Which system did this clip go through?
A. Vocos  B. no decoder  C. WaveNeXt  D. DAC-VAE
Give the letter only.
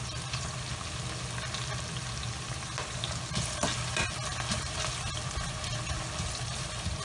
B